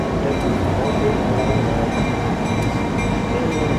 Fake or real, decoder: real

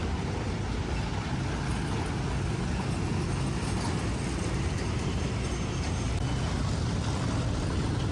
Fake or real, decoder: real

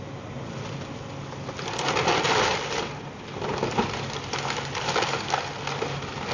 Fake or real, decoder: real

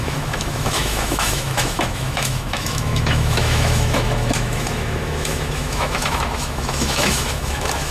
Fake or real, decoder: fake, autoencoder, DAC-VAE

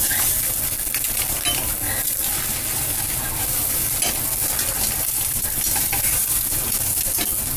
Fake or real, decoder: real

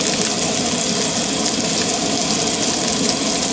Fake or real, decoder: real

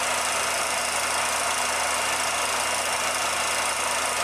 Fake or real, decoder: real